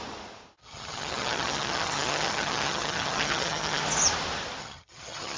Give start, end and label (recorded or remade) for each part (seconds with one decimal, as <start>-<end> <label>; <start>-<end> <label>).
0.0-0.6 recorded; 0.6-3.8 remade; 3.8-4.6 recorded; 4.6-5.4 remade